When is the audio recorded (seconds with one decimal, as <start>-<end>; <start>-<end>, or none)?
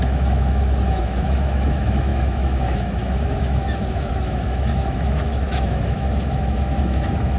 none